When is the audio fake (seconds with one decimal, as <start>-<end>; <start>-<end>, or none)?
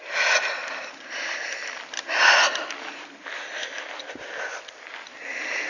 none